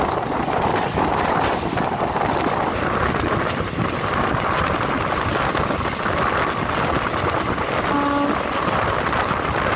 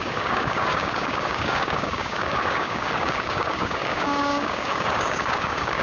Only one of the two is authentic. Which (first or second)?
first